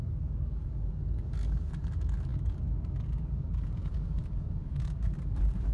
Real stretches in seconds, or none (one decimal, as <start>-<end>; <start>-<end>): none